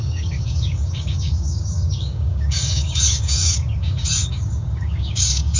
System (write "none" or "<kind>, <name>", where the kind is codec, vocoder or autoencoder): codec, DAC